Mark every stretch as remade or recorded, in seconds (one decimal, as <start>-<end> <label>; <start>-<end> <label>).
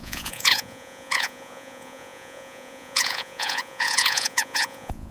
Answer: 0.0-5.1 remade